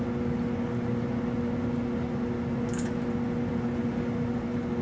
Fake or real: real